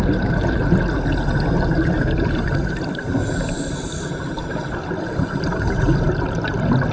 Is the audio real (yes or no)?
yes